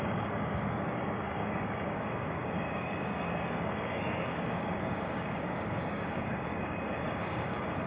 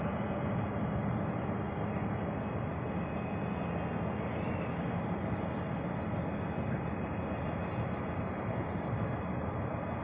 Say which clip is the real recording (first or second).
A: second